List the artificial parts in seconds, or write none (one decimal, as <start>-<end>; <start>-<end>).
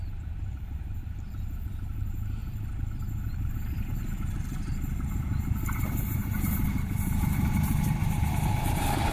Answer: 0.0-2.4; 3.3-9.1